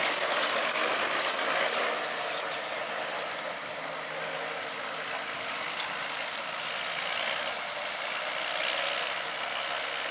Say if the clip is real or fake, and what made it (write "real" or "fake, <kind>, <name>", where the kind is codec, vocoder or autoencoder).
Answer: real